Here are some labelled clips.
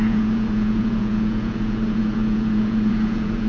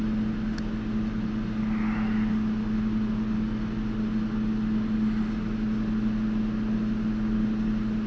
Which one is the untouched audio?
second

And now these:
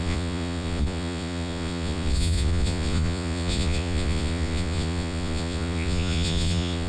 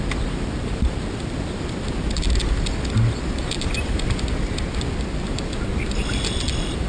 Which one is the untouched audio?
second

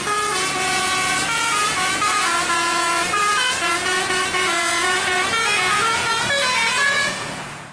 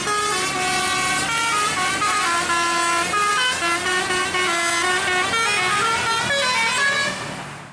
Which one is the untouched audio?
second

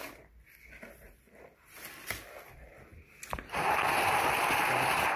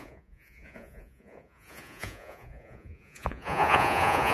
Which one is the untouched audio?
first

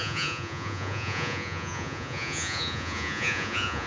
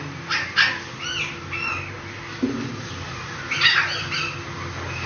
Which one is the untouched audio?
second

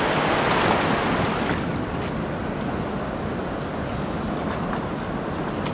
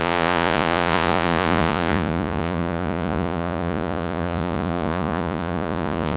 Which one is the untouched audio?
first